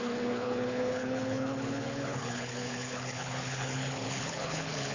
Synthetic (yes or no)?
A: yes